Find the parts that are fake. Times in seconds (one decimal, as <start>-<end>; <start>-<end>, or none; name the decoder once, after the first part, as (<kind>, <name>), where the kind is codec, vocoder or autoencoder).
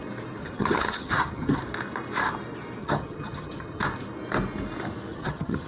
0.4-1.6 (vocoder, HiFi-GAN); 2.8-3.8; 5.1-5.7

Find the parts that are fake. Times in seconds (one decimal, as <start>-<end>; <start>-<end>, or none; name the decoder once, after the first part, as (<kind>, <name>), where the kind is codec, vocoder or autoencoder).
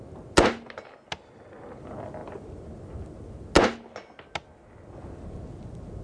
none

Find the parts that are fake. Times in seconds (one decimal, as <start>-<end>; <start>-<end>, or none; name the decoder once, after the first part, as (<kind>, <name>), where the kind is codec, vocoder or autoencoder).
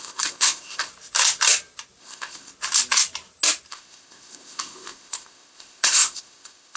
0.0-0.9 (codec, ZipCodec); 2.0-2.5; 3.7-6.8